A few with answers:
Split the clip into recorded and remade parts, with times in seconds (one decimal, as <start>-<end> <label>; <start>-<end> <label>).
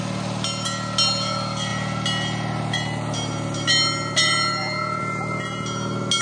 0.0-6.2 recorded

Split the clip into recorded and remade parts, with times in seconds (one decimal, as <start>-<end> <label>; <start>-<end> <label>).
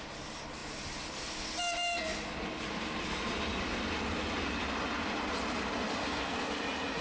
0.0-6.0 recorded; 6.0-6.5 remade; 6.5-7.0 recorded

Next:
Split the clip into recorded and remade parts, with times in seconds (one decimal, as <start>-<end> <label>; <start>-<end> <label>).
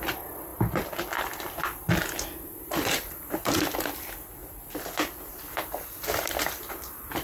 0.0-4.4 remade; 4.4-5.3 recorded; 5.3-7.2 remade